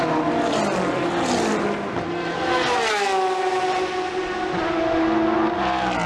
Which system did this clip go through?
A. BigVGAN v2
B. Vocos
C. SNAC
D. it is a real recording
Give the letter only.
D